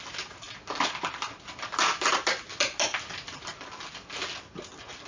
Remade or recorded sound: recorded